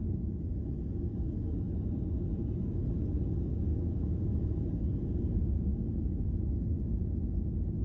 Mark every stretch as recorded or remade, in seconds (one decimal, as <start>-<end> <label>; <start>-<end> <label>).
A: 0.0-3.7 recorded; 3.7-4.5 remade; 4.5-5.7 recorded; 5.7-6.3 remade; 6.3-7.8 recorded